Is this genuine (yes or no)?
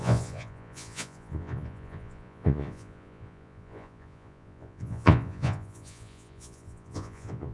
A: no